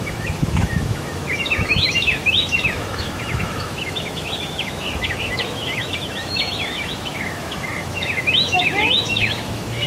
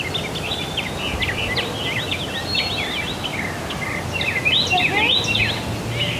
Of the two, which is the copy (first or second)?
first